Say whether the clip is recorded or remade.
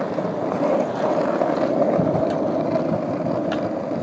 recorded